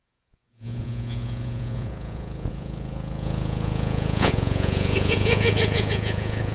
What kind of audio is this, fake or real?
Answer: fake